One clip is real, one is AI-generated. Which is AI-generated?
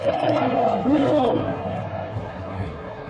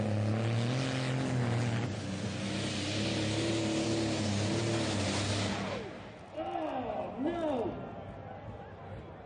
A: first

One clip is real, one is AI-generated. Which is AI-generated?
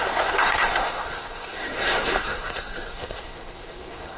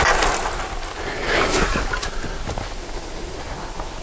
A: first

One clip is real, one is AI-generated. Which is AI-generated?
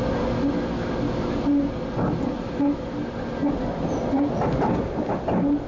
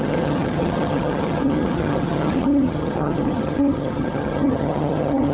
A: second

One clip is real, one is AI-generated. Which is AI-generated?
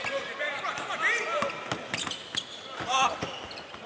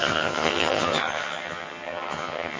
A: second